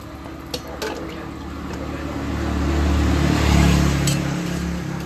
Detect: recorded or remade recorded